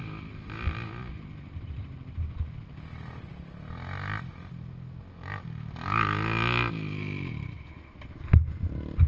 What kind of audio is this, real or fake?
real